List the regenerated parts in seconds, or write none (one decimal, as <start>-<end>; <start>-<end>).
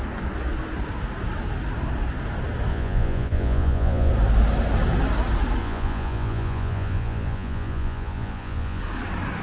2.7-4.1; 5.6-8.8